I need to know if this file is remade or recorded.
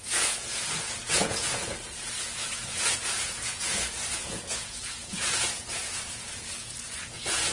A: remade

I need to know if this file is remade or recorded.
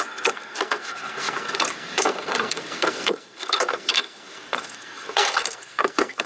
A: remade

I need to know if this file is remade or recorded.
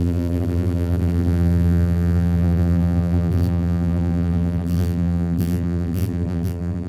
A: remade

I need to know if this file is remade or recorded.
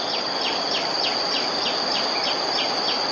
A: remade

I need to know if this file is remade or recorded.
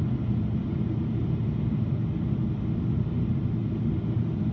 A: recorded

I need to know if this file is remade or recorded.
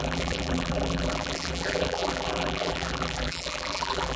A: remade